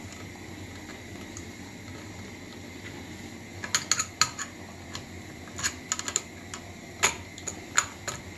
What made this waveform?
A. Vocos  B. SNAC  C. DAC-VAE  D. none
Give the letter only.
D